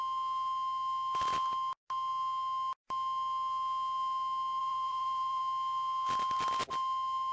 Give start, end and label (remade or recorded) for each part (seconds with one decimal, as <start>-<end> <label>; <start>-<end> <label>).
0.0-4.6 recorded; 4.6-5.4 remade; 5.4-7.3 recorded